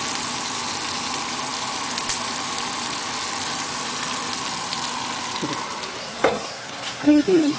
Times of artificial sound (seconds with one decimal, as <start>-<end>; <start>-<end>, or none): 6.0-7.6